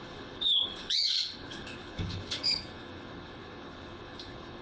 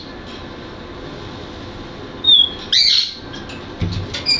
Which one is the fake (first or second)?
first